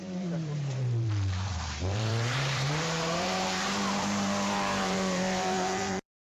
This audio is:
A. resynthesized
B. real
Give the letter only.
A